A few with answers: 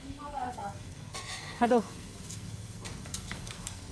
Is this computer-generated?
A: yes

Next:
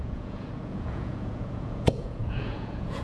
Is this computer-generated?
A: yes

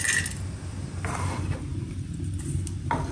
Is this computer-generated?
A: no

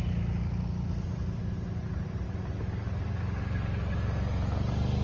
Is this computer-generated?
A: no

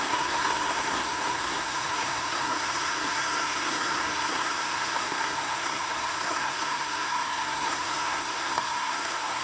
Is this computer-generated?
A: yes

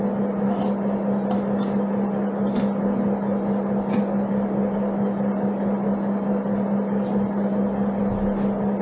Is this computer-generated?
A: no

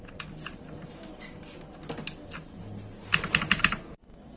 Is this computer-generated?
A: no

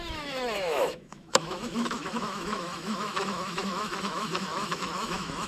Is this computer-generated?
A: yes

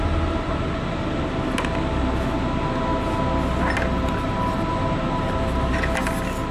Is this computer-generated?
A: no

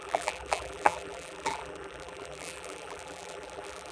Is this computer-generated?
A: yes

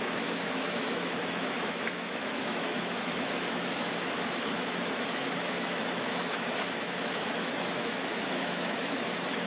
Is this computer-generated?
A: yes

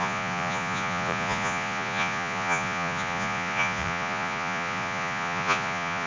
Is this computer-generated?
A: yes